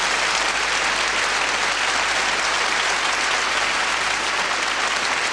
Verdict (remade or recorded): recorded